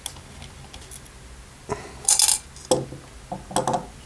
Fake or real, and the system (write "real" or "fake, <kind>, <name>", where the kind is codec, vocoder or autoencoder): real